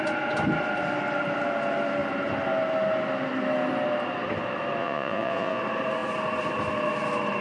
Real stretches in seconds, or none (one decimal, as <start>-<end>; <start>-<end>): 0.0-4.8; 5.6-7.4

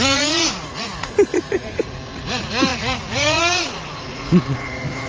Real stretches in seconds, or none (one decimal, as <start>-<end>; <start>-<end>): none

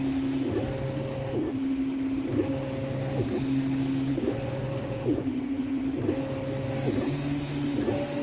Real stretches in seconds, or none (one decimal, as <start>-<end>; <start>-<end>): 0.0-4.1; 5.8-8.2

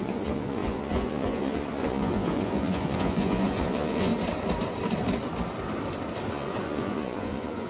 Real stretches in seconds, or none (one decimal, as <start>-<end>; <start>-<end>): 4.1-6.3

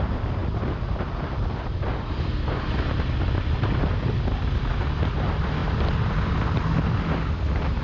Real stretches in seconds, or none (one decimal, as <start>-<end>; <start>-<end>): 0.0-7.8

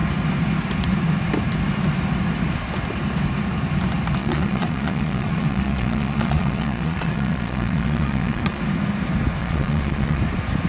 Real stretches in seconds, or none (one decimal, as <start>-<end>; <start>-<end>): 0.0-4.2; 8.6-9.4; 10.2-10.7

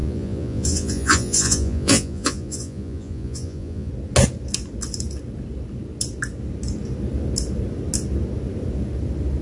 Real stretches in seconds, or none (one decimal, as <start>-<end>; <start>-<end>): 3.9-9.4